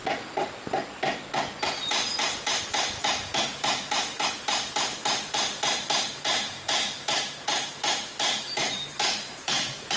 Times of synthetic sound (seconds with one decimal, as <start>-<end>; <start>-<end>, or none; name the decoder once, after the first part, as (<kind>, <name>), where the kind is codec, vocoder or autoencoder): 2.6-10.0 (vocoder, BigVGAN v2)